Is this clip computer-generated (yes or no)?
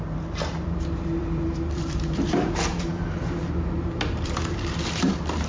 yes